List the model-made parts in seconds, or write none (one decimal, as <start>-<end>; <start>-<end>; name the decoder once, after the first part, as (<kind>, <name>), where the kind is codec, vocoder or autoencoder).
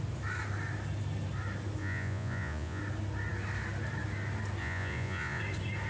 1.8-2.8 (vocoder, Vocos); 4.6-5.4